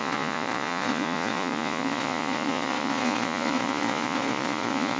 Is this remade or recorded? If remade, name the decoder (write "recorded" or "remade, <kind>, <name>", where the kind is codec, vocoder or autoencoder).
remade, vocoder, Vocos